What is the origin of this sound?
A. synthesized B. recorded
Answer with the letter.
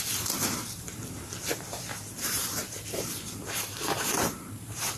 A